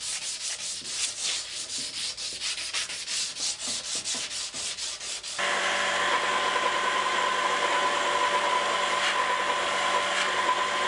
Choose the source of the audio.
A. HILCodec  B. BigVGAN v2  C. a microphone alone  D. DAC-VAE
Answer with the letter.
C